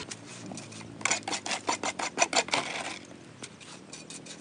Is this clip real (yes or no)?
yes